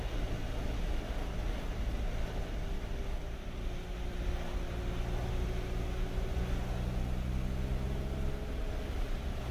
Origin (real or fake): real